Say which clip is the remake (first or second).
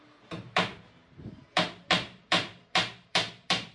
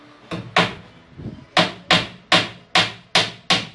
first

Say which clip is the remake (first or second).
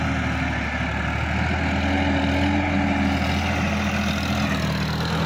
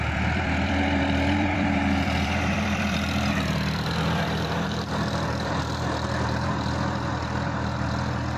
second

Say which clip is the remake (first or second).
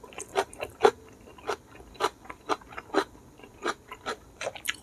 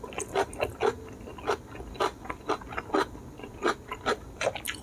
first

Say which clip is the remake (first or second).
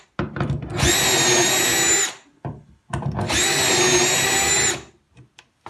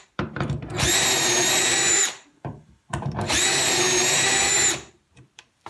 second